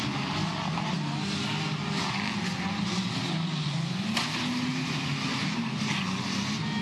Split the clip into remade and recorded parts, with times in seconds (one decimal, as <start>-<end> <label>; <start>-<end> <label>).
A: 0.0-6.8 recorded